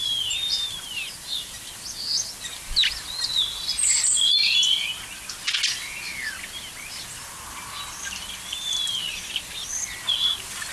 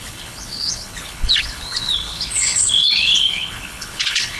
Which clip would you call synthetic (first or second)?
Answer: second